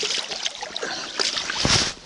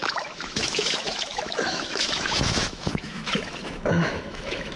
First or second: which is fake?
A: second